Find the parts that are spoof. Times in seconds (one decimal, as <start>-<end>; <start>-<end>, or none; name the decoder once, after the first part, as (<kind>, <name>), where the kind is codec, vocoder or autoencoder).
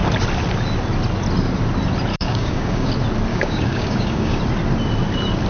2.1-2.9 (codec, DAC); 3.3-4.4